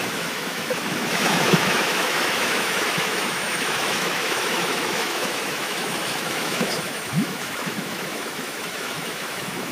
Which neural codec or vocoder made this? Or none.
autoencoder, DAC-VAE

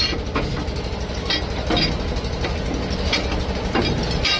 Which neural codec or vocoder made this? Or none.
none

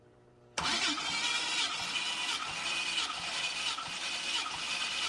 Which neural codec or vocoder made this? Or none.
vocoder, BigVGAN v2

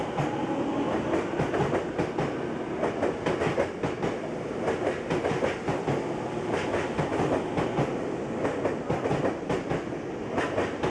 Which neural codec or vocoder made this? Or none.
none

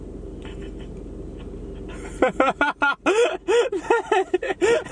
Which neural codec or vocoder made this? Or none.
none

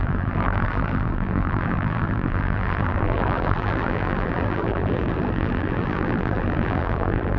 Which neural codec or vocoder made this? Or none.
vocoder, BigVGAN v2